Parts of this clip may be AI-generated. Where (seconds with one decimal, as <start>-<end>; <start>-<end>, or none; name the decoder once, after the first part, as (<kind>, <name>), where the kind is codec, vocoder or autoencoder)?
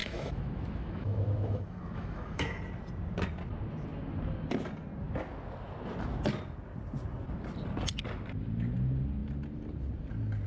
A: 0.0-2.6 (autoencoder, DAC-VAE)